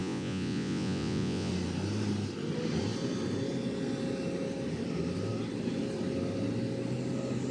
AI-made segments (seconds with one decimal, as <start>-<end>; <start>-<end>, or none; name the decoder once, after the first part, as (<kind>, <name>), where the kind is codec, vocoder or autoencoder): 0.0-1.5 (vocoder, Vocos)